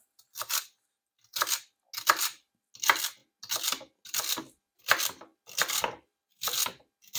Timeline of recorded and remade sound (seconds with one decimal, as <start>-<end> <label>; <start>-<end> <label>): 0.0-5.3 recorded; 5.3-6.3 remade; 6.3-7.2 recorded